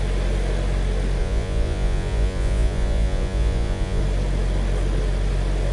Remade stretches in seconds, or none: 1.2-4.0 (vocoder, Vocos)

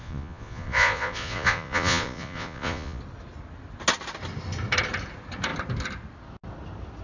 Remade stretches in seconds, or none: 0.0-3.0 (vocoder, Vocos)

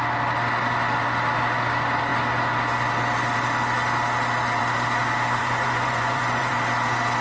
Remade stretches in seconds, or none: 5.4-6.5 (vocoder, Vocos)

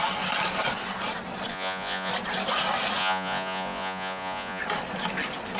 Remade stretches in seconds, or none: 1.5-2.1 (vocoder, Vocos); 3.0-4.6